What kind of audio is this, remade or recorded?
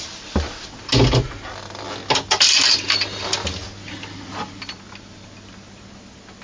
recorded